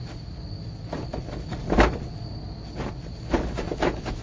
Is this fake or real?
real